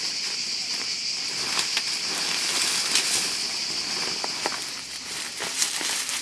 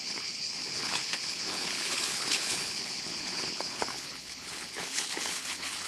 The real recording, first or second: first